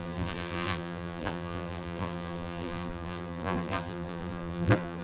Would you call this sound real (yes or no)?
no